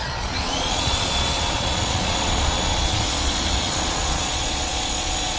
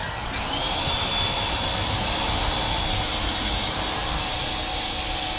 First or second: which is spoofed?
first